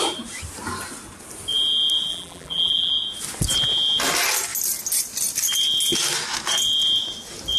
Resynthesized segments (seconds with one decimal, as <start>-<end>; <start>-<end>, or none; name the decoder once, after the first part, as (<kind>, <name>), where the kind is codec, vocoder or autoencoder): 2.1-2.9 (vocoder, BigVGAN v2)